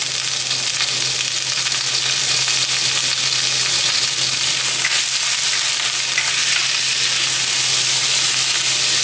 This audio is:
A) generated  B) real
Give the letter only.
B